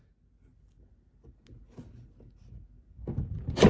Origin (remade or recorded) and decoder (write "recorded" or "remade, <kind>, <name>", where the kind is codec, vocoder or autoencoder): recorded